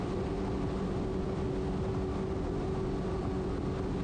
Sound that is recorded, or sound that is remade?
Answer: recorded